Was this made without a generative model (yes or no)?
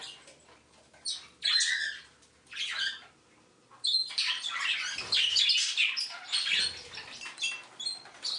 yes